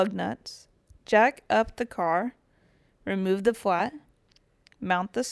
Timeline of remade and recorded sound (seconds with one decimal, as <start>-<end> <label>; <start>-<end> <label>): 0.0-0.6 recorded; 0.6-3.8 remade; 3.8-4.3 recorded; 4.3-5.3 remade